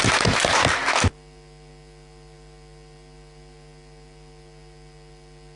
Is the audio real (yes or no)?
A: yes